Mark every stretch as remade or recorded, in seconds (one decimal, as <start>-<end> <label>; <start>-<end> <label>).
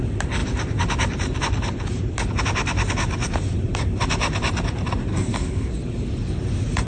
0.0-5.1 recorded; 5.1-5.7 remade; 5.7-6.9 recorded